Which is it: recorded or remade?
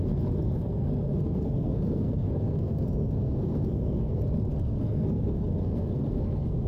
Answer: remade